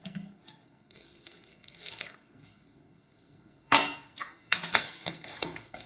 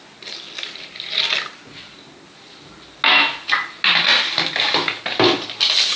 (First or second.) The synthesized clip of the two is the first